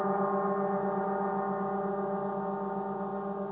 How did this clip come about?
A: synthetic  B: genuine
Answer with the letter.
B